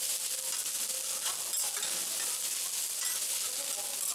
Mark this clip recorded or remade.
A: recorded